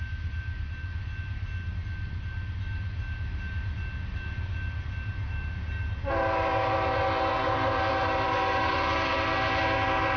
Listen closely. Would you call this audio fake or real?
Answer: real